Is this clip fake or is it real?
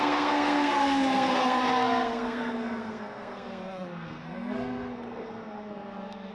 fake